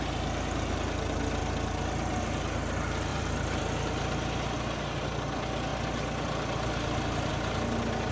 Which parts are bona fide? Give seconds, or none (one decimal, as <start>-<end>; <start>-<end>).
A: 0.0-3.1; 3.6-8.1